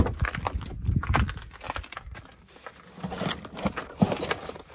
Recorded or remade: recorded